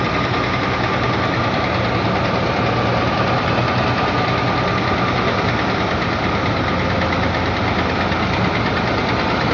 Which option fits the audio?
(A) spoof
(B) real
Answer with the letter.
B